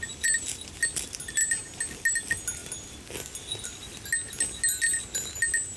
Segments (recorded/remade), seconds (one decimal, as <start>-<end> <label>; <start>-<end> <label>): 0.0-5.8 recorded